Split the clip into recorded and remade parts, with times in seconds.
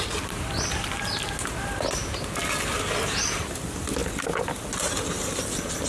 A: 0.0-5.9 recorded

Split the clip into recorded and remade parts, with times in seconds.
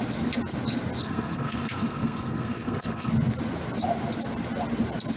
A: 0.0-1.0 recorded; 1.0-3.1 remade; 3.1-5.2 recorded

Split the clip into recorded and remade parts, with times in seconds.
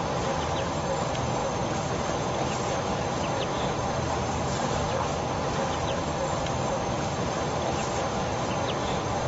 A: 0.0-9.3 recorded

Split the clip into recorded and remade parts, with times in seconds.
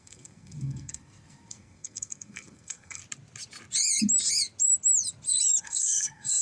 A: 0.0-3.0 remade; 3.0-5.6 recorded; 5.6-6.4 remade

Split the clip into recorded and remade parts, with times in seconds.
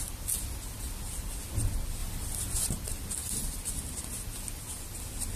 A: 0.0-5.4 recorded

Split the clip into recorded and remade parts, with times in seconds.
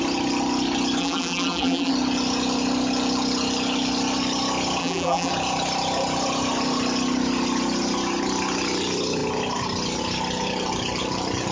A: 0.0-1.0 recorded; 1.0-1.9 remade; 1.9-4.8 recorded; 4.8-5.3 remade; 5.3-11.5 recorded